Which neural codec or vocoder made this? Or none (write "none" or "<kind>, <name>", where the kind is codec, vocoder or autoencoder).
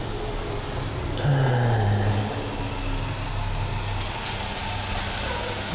none